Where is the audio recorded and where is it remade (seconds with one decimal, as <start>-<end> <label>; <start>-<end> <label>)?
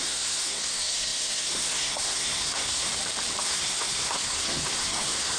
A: 0.0-2.9 remade; 2.9-3.4 recorded; 3.4-5.4 remade